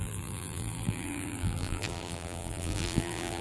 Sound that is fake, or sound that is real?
fake